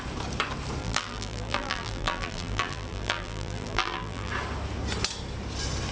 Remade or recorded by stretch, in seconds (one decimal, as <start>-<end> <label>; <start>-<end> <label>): 0.0-0.8 recorded; 0.8-4.3 remade; 4.3-5.9 recorded